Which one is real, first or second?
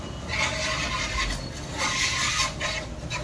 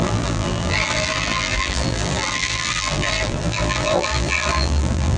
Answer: first